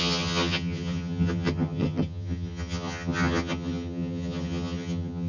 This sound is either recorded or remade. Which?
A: remade